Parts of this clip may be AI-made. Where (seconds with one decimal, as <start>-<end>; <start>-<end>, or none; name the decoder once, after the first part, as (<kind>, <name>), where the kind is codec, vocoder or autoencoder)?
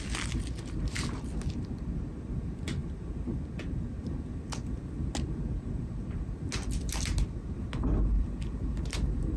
none